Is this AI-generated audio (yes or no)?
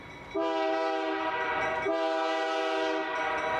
no